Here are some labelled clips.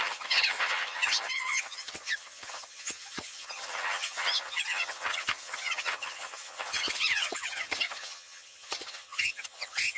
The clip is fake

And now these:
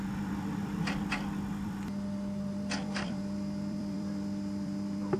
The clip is fake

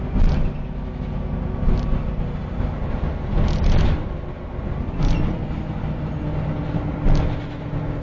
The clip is real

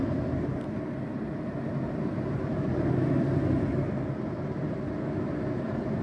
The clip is real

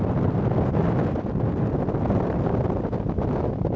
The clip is real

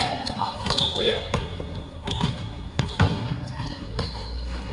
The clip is fake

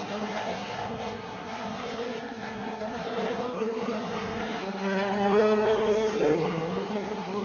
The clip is fake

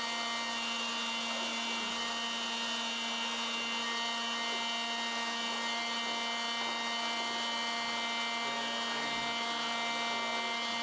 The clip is real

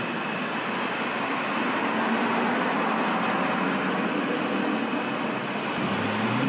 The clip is real